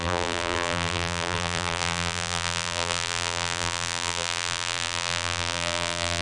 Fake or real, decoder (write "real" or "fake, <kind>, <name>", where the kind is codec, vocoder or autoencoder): fake, vocoder, BigVGAN v2